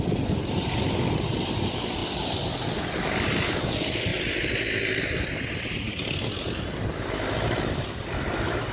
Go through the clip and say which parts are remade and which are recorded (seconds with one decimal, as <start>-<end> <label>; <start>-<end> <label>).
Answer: 0.0-4.1 recorded; 4.1-6.8 remade; 6.8-8.7 recorded

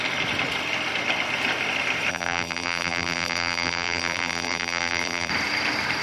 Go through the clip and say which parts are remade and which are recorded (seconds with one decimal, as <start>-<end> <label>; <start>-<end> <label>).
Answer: 0.0-2.1 recorded; 2.1-5.3 remade; 5.3-6.0 recorded

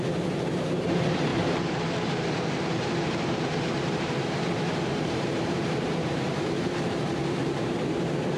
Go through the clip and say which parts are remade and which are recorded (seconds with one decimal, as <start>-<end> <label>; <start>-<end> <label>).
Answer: 0.0-8.4 remade

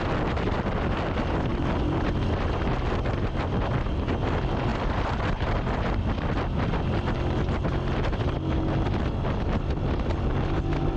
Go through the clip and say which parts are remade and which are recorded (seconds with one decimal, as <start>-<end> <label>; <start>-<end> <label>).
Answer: 0.0-1.5 recorded; 1.5-2.1 remade; 2.1-4.7 recorded; 4.7-6.2 remade; 6.2-11.0 recorded

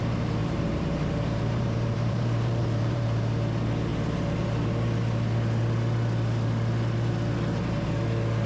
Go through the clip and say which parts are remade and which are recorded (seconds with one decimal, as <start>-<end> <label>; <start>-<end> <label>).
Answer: 0.0-0.4 recorded; 0.4-3.0 remade; 3.0-8.5 recorded

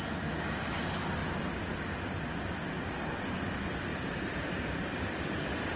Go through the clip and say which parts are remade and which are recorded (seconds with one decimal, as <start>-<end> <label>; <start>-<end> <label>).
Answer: 0.0-3.9 recorded; 3.9-4.9 remade; 4.9-5.8 recorded